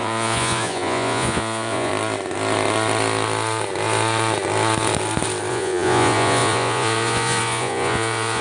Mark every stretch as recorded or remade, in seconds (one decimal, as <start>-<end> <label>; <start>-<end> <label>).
0.0-1.9 remade; 1.9-5.5 recorded; 5.5-8.4 remade